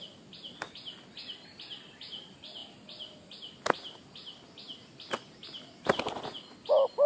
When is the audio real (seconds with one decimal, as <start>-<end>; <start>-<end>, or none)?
0.0-7.1